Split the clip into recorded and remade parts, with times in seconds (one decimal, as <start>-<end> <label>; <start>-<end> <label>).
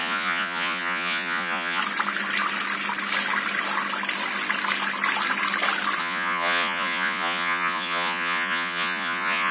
0.0-1.8 remade; 1.8-6.0 recorded; 6.0-9.5 remade